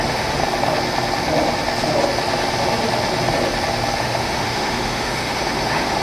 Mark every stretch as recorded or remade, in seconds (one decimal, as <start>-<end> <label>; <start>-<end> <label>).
0.0-0.4 remade; 0.4-4.0 recorded; 4.0-6.0 remade